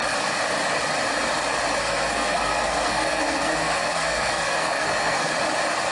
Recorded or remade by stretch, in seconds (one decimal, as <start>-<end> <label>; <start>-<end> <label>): 0.0-1.8 recorded; 1.8-5.3 remade; 5.3-5.9 recorded